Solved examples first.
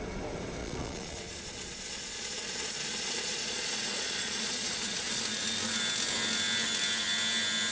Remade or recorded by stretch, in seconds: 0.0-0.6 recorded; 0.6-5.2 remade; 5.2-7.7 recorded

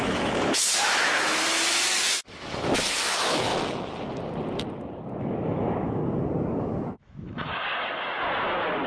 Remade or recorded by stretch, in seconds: 0.0-3.5 remade; 3.5-5.2 recorded; 5.2-6.0 remade; 6.0-6.6 recorded; 6.6-7.5 remade; 7.5-8.9 recorded

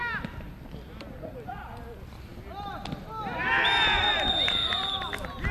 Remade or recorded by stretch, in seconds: 0.0-5.5 recorded

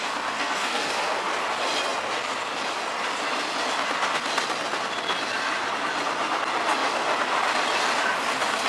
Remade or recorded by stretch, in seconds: 0.0-1.3 remade; 1.3-8.7 recorded

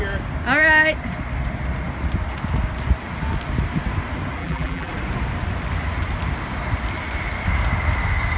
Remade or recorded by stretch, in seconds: 0.0-4.4 recorded; 4.4-4.9 remade; 4.9-8.4 recorded